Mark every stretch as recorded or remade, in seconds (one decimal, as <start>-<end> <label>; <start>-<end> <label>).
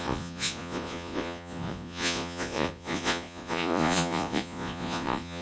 0.0-5.4 remade